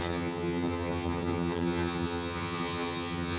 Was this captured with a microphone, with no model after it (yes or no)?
no